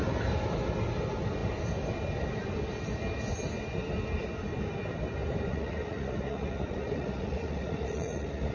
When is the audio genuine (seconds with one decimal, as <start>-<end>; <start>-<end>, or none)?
0.0-5.5